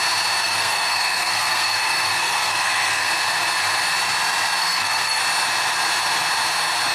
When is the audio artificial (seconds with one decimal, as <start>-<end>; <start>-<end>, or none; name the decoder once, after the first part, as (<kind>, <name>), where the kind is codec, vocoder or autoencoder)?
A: 0.4-3.1 (codec, SNAC); 4.6-5.2